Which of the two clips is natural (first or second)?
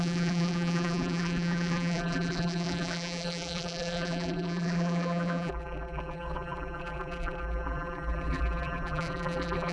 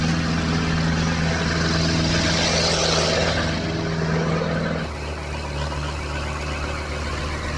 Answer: second